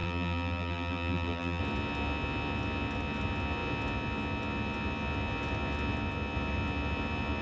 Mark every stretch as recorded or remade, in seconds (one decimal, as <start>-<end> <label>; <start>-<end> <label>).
0.0-1.6 remade; 1.6-7.4 recorded